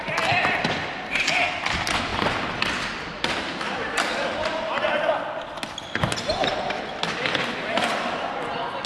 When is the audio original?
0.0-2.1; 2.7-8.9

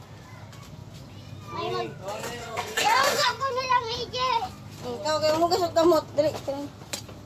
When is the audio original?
0.0-2.4; 3.6-7.3

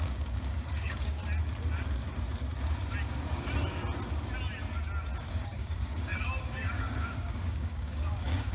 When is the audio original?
1.2-5.3

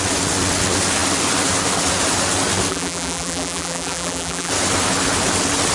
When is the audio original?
0.0-2.7; 4.5-5.7

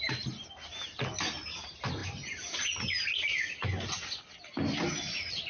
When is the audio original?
0.0-5.5

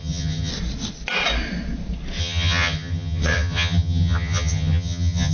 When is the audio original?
0.5-2.2

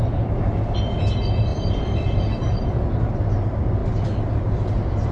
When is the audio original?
0.0-1.5; 3.0-5.1